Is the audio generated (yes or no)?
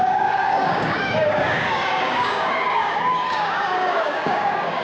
yes